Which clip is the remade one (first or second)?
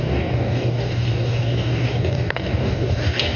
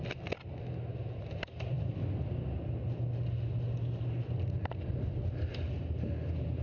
first